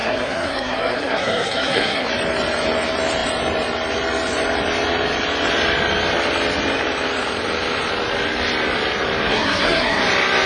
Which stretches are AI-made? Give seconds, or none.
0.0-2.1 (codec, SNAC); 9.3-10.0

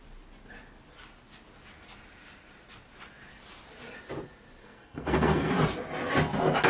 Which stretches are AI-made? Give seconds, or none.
4.6-5.5 (codec, SNAC)

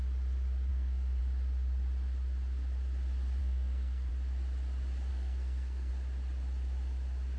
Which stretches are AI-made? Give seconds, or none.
0.7-1.2 (codec, SNAC); 3.4-4.1; 5.1-5.9

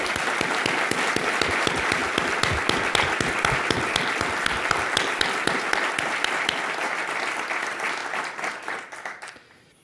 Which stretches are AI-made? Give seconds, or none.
none